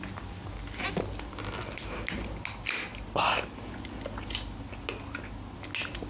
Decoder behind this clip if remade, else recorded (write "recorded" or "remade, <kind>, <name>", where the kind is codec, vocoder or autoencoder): recorded